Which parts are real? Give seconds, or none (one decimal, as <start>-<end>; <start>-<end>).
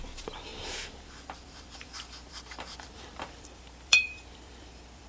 none